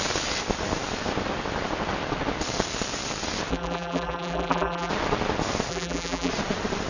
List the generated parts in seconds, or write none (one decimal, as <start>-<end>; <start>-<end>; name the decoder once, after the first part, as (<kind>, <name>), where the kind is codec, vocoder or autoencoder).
3.5-4.9 (vocoder, BigVGAN v2); 5.7-6.3